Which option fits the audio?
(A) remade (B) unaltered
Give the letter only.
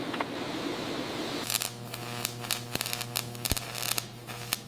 B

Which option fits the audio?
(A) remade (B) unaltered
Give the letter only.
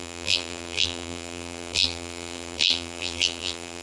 A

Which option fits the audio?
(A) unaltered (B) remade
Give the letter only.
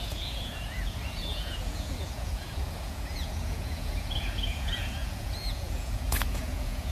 B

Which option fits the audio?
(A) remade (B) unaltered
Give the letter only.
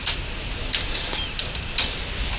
B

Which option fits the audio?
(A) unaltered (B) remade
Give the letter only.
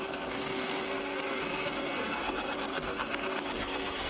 B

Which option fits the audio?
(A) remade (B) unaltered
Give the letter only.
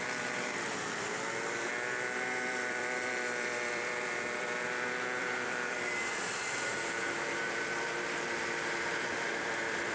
A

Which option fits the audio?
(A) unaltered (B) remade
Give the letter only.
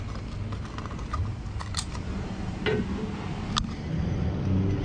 A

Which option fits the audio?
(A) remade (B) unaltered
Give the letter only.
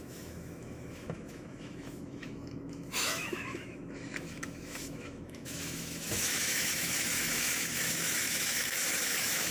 A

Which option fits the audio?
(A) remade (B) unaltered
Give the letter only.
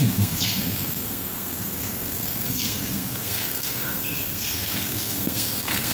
A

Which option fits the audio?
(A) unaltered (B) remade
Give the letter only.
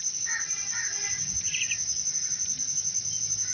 A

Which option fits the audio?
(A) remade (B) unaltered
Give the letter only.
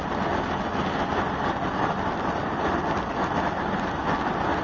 B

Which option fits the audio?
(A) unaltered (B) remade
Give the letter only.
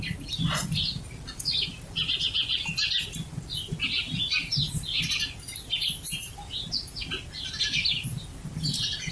A